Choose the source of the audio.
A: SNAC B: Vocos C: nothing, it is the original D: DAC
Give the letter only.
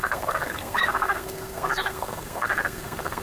A